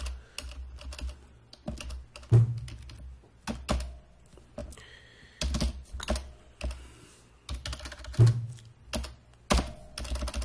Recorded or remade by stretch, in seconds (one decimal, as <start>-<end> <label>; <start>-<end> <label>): 0.0-10.4 recorded